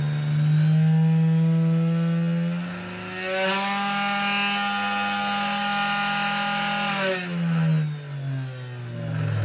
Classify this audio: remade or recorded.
recorded